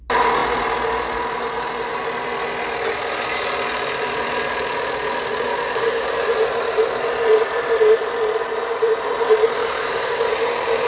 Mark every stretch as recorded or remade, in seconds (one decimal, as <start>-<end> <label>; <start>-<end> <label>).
0.0-5.5 recorded; 5.5-6.1 remade; 6.1-9.6 recorded; 9.6-10.2 remade; 10.2-10.9 recorded